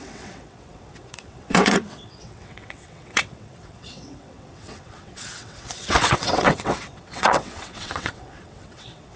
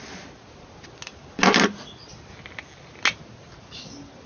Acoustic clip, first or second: second